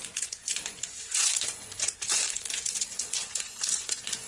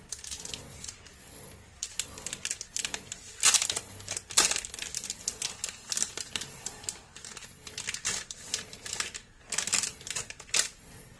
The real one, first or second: second